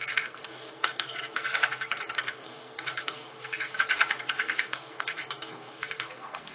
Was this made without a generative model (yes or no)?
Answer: no